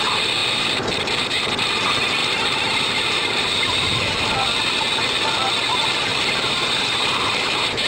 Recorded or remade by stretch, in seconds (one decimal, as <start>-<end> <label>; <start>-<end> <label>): 0.0-0.4 recorded; 0.4-1.0 remade; 1.0-2.2 recorded; 2.2-4.3 remade; 4.3-6.1 recorded; 6.1-7.9 remade